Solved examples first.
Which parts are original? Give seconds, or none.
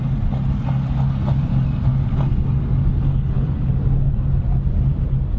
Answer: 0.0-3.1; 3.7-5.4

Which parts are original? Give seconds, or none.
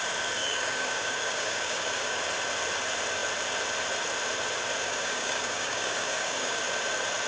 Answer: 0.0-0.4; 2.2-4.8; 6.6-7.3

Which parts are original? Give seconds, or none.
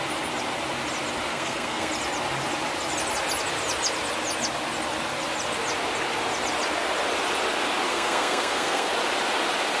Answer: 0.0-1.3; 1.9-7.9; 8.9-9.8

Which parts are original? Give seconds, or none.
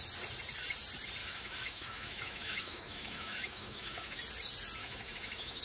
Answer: 0.0-1.2; 4.2-4.8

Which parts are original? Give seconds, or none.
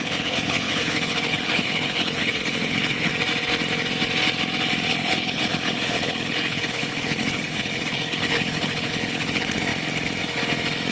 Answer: 3.1-4.9; 9.7-10.9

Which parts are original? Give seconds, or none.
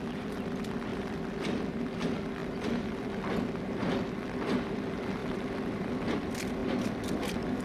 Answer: 0.0-0.9; 1.6-2.4; 3.2-5.2; 5.9-7.6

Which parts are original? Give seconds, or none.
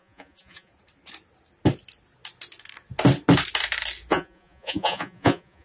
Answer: 0.7-4.1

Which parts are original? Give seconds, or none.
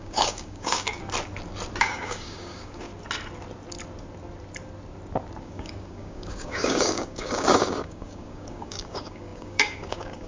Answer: 1.0-1.8; 2.9-5.4